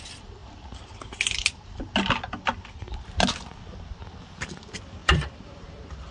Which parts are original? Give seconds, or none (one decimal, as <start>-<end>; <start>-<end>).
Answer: 0.0-5.0